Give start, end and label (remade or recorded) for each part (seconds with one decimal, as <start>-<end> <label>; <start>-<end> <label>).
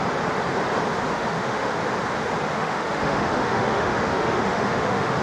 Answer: 0.0-1.1 recorded; 1.1-1.8 remade; 1.8-2.5 recorded; 2.5-5.2 remade